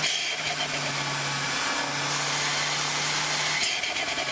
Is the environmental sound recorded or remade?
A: recorded